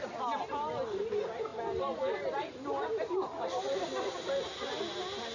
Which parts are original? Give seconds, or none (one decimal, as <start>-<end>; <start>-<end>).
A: 0.0-5.3